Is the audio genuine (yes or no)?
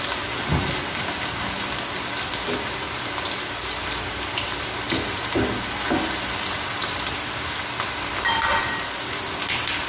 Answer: yes